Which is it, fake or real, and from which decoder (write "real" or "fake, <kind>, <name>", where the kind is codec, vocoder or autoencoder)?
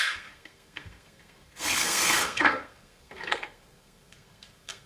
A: fake, codec, SNAC